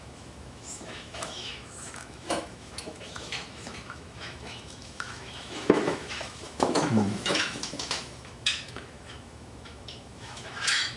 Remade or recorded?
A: remade